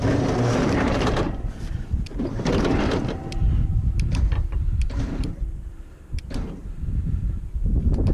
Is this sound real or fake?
fake